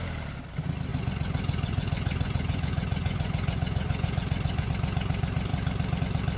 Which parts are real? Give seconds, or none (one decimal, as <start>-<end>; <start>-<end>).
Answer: 0.0-0.9; 4.7-6.4